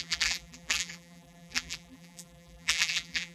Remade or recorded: remade